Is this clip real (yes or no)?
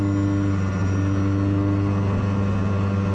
yes